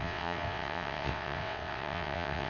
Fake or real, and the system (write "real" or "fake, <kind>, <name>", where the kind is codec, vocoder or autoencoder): fake, vocoder, WaveNeXt